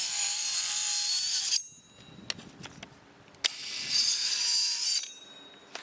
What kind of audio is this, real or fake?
real